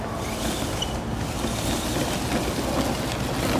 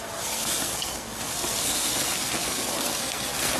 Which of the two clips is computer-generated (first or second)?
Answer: second